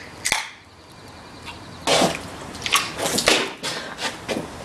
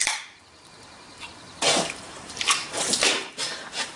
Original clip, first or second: first